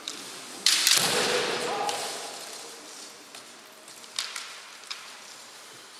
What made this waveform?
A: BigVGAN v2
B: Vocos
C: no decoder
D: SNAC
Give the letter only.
A